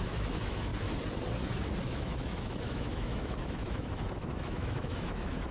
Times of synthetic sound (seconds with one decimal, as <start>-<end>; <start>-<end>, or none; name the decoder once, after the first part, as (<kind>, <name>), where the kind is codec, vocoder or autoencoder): 0.0-0.7 (autoencoder, DAC-VAE); 1.8-5.5